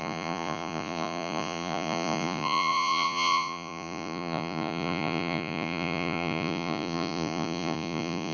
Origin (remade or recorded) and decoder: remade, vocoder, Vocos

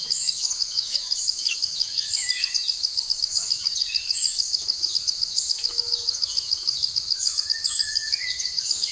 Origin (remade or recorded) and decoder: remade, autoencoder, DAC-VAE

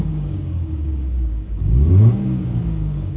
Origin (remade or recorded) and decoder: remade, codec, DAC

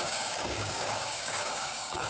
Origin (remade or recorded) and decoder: remade, codec, DAC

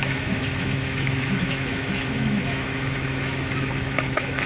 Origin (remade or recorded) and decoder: remade, autoencoder, DAC-VAE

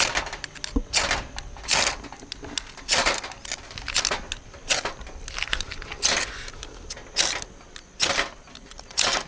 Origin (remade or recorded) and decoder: recorded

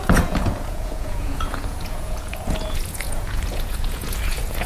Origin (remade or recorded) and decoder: remade, vocoder, Vocos